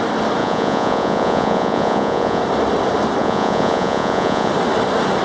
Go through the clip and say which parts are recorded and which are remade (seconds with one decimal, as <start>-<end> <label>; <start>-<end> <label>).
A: 0.0-0.4 recorded; 0.4-2.4 remade; 2.4-3.2 recorded; 3.2-4.5 remade; 4.5-5.2 recorded